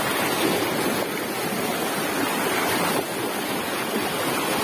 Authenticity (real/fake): real